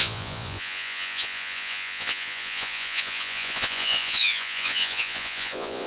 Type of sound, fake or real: fake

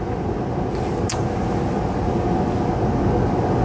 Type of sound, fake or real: real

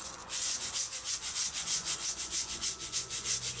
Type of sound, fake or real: fake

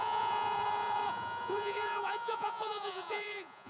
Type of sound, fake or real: fake